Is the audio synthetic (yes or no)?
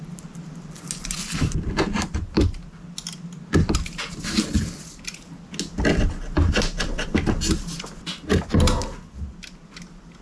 no